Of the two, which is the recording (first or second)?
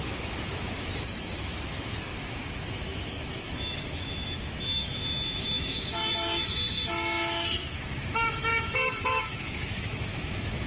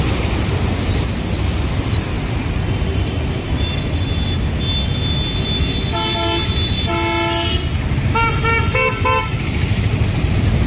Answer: second